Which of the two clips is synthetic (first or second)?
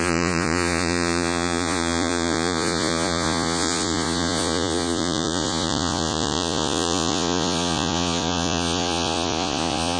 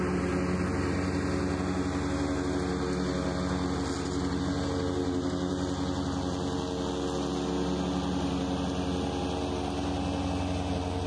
first